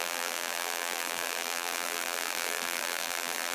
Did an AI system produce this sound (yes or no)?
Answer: yes